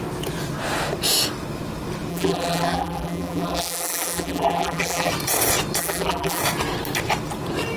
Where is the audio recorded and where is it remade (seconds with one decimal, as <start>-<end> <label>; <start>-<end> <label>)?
0.0-2.1 recorded; 2.1-5.1 remade; 5.1-5.8 recorded; 5.8-6.4 remade; 6.4-7.8 recorded